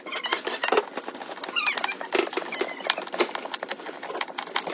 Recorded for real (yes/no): yes